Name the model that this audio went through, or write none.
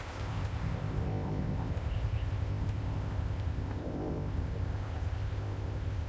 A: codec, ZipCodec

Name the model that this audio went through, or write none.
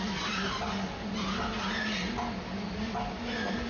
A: none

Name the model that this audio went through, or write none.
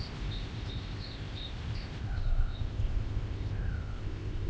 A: codec, ZipCodec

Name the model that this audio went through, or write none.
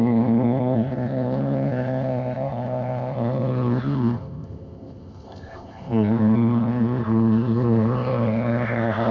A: codec, ZipCodec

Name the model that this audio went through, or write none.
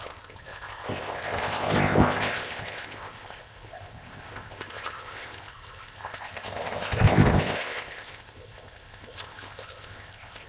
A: codec, ZipCodec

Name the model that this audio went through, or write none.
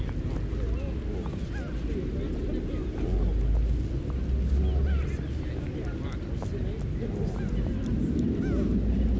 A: none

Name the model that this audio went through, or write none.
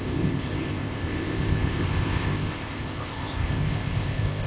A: codec, ZipCodec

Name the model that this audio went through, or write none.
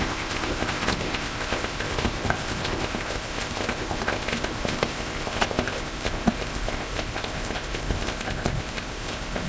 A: codec, ZipCodec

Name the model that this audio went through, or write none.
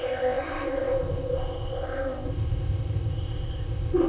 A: codec, ZipCodec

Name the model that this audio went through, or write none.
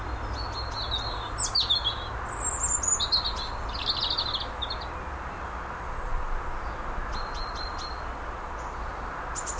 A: none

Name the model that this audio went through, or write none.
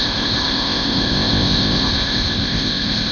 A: codec, ZipCodec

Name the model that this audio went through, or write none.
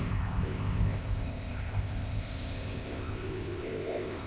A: codec, ZipCodec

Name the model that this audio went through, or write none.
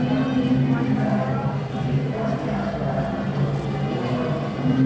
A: none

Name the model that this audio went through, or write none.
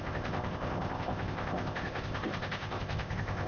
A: codec, ZipCodec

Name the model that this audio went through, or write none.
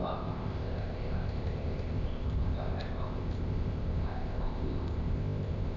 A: codec, ZipCodec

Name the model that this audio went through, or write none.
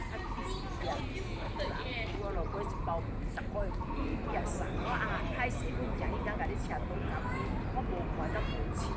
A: none